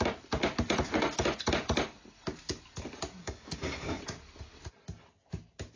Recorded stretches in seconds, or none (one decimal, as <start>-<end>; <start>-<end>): 0.0-3.2; 4.0-5.8